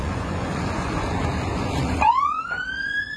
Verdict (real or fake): fake